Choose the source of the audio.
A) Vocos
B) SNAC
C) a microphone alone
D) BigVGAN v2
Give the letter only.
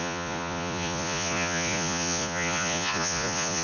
A